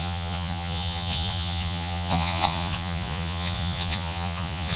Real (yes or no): no